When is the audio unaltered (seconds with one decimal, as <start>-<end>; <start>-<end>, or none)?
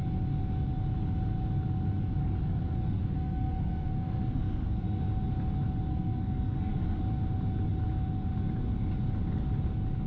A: 0.0-2.2; 5.0-5.9; 7.0-10.1